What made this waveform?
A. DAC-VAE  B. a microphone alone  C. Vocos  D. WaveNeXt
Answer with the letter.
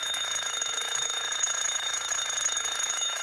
A